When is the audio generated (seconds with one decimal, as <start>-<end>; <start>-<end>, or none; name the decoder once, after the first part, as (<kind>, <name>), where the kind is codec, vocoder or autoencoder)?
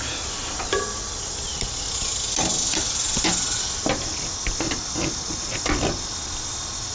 none